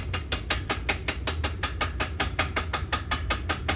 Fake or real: real